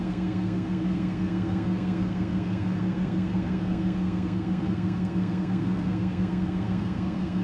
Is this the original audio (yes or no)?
no